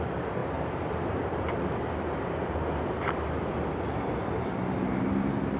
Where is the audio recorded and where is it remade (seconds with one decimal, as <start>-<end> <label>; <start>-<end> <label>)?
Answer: 0.0-0.4 recorded; 0.4-3.8 remade; 3.8-5.6 recorded